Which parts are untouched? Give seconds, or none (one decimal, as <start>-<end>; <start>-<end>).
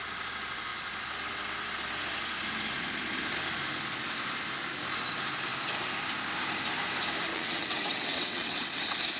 0.0-7.3; 8.6-9.2